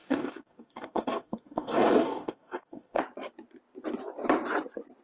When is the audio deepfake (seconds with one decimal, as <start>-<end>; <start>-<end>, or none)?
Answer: 0.0-3.0